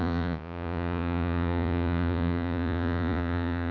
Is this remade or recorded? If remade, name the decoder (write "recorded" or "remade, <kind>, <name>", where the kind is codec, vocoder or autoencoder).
remade, vocoder, Vocos